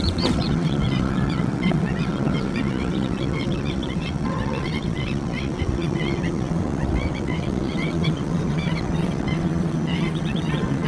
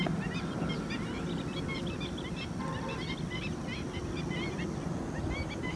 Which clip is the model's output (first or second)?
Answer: first